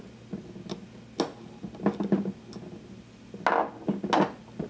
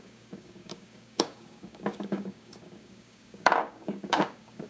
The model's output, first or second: second